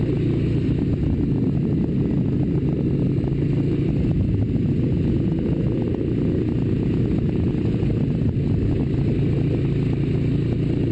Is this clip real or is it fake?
real